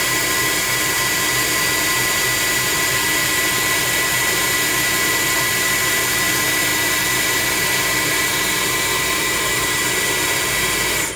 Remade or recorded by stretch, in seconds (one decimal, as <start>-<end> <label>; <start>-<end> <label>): 0.0-11.2 recorded